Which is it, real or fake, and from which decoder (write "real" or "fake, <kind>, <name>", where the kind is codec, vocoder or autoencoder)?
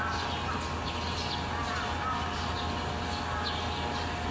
real